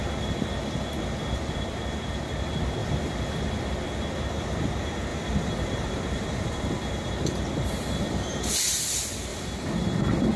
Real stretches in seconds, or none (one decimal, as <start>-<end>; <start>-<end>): 0.0-2.8; 3.5-5.1; 7.1-9.3